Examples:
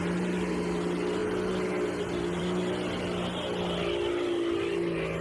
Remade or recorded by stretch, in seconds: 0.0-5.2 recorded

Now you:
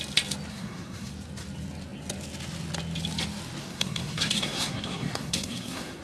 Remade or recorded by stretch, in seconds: 0.0-0.5 recorded; 0.5-1.1 remade; 1.1-3.6 recorded; 3.6-6.0 remade

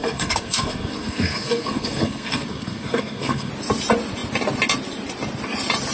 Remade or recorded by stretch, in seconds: 0.0-3.5 remade; 3.5-5.9 recorded

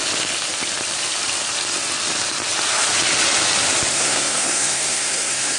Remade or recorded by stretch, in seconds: 0.0-3.9 recorded; 3.9-5.6 remade